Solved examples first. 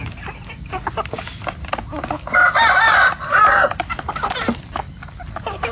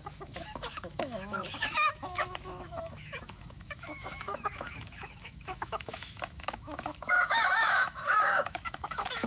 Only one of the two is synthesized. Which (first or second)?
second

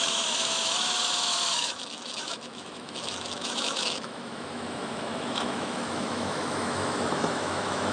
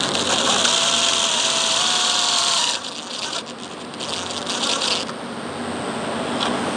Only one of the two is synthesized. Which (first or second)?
first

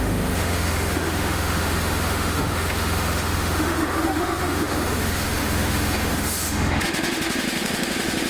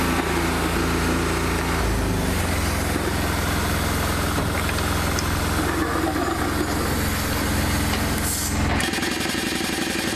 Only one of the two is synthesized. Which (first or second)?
first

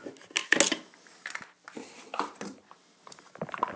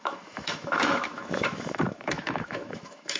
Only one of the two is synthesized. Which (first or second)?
second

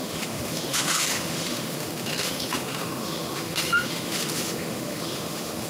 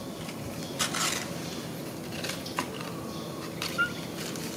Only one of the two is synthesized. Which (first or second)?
first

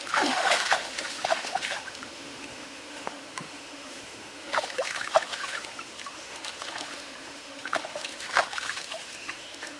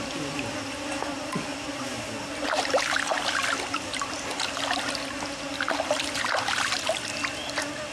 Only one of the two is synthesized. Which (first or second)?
first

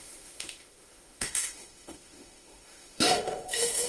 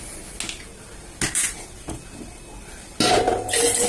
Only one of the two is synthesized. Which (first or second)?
first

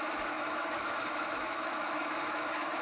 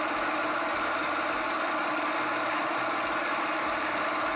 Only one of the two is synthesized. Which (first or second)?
first